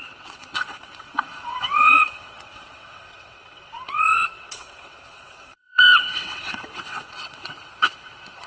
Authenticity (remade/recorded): remade